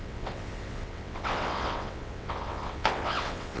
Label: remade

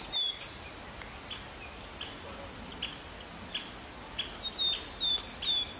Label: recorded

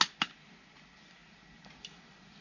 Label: recorded